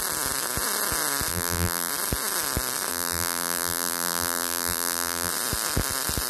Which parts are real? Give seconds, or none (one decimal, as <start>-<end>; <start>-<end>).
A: 0.0-1.3; 1.9-2.9; 5.3-6.3